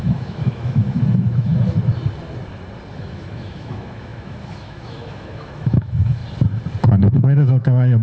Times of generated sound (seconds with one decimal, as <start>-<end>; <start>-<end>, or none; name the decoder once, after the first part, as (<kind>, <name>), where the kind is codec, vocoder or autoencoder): 0.0-1.5 (autoencoder, DAC-VAE); 2.9-6.2; 7.0-8.0

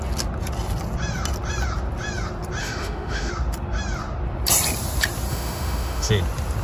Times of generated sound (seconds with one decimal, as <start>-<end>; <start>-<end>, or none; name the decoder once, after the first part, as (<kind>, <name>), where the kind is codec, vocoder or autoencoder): 2.6-3.3 (autoencoder, DAC-VAE); 5.3-6.1